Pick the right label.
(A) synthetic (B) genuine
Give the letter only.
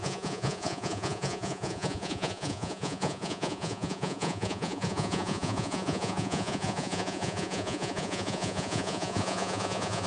A